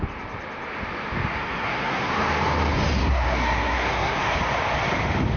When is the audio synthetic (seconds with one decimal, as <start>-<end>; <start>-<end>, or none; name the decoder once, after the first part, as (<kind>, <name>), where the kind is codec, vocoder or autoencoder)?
1.3-2.1 (codec, SNAC); 3.0-4.3